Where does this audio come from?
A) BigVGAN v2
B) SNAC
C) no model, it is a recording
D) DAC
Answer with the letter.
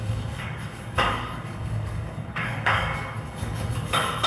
D